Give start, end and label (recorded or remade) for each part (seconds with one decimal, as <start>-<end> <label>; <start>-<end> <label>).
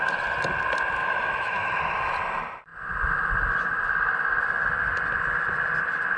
0.0-1.0 recorded; 1.0-1.8 remade; 1.8-6.2 recorded